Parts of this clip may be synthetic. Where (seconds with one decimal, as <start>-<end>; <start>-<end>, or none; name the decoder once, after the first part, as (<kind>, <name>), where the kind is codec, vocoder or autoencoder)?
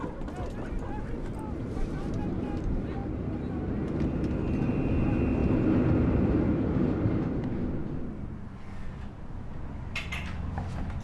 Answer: none